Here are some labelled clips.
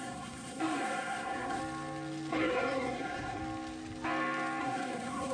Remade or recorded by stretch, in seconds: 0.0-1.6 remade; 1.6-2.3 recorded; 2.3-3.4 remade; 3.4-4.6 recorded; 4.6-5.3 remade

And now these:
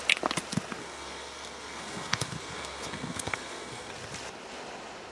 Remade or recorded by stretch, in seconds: 0.0-0.8 recorded; 0.8-3.9 remade; 3.9-5.1 recorded